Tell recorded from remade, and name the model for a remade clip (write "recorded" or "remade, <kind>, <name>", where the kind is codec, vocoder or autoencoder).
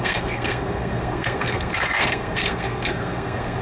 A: remade, codec, SNAC